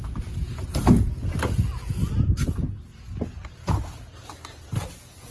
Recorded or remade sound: recorded